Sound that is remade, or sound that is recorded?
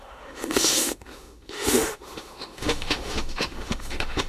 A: remade